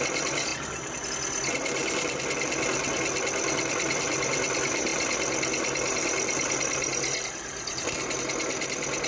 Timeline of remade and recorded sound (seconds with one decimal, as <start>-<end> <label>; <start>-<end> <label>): 0.0-0.5 recorded; 0.5-1.1 remade; 1.1-9.1 recorded